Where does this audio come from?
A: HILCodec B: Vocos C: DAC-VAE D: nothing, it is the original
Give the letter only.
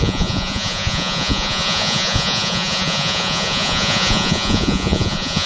B